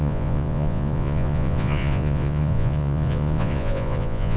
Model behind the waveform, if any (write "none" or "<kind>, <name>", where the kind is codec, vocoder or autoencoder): vocoder, Vocos